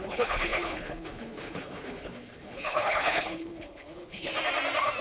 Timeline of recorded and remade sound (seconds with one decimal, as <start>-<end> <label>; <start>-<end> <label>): 0.0-4.3 remade; 4.3-5.0 recorded